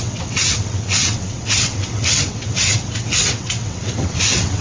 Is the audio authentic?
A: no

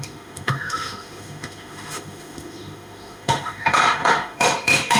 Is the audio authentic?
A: no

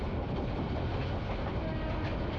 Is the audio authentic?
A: yes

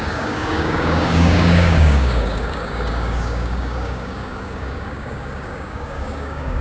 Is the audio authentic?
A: no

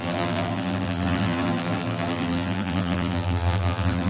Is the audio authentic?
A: no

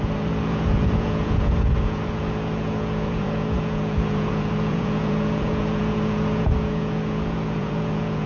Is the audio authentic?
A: no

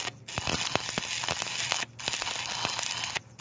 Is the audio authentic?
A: yes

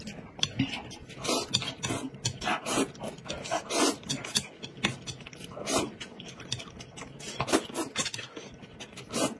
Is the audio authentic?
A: yes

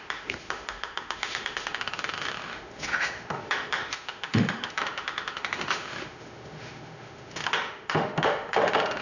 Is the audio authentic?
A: no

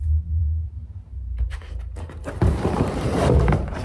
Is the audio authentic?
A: no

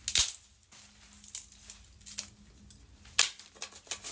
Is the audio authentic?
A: yes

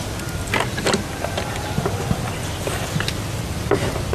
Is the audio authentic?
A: yes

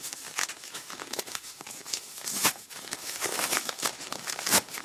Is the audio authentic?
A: no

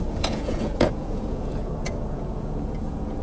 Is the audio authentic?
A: no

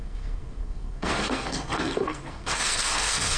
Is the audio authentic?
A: no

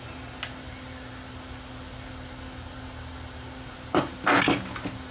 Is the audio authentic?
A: yes